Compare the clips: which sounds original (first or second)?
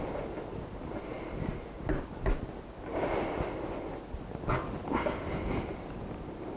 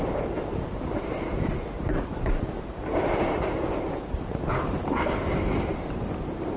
first